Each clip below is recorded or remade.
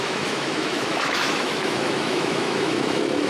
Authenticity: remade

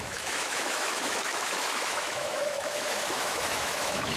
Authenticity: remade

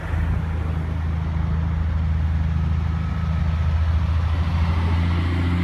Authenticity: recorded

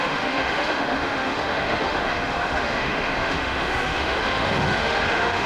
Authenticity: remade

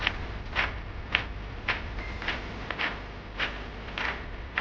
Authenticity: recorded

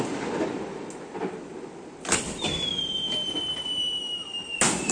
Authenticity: recorded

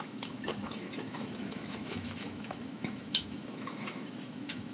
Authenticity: remade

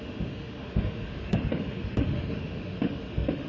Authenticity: remade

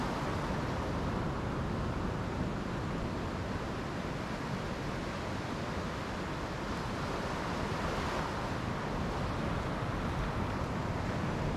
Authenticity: recorded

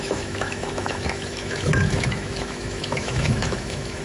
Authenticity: remade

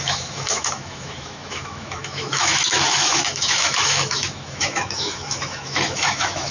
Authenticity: remade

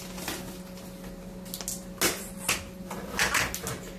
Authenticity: recorded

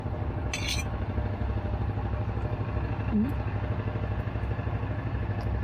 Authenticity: recorded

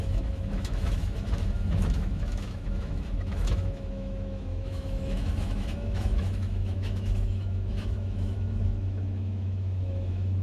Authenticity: remade